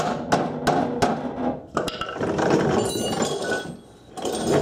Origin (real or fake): real